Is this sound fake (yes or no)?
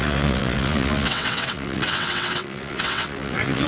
yes